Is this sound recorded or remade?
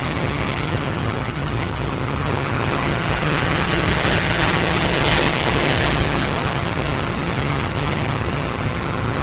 remade